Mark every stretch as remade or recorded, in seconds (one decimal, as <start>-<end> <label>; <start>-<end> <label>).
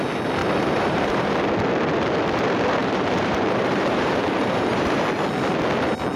0.0-0.4 recorded; 0.4-1.3 remade; 1.3-2.8 recorded; 2.8-5.0 remade; 5.0-6.2 recorded